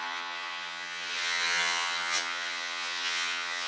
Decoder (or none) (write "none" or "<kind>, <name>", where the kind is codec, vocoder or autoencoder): vocoder, HiFi-GAN